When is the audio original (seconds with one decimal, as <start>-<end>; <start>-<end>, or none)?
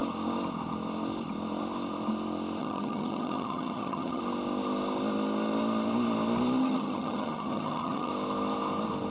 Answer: 0.0-2.6; 4.2-6.6; 8.1-9.1